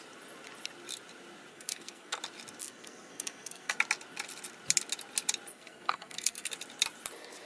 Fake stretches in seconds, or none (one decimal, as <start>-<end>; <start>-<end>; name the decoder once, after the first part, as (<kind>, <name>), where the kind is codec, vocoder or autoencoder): 1.5-2.2 (codec, SNAC); 2.6-3.8; 5.5-6.5